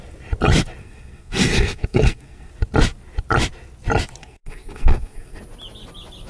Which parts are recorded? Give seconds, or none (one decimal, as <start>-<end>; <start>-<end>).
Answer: 0.0-0.8; 2.5-4.2; 5.4-6.3